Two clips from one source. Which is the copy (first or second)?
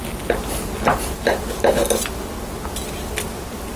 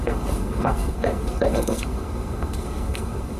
second